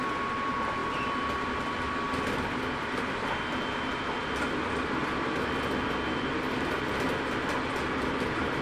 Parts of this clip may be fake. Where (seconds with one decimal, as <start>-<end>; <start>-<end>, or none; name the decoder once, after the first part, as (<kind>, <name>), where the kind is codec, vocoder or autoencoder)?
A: none